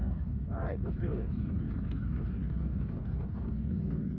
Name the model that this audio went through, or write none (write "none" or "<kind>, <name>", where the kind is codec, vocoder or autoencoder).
codec, DAC